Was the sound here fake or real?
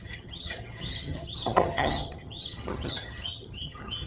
fake